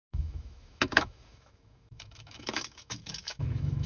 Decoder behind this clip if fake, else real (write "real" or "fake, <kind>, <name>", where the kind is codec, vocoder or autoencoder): fake, autoencoder, DAC-VAE